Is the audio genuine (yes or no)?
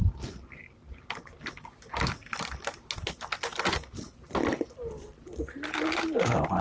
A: yes